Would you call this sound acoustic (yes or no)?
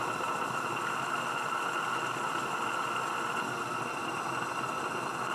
yes